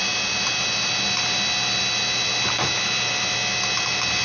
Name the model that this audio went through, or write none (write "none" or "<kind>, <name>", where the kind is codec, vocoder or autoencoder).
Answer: none